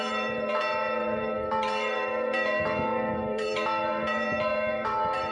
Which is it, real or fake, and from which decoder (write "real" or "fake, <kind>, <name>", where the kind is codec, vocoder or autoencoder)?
fake, vocoder, BigVGAN v2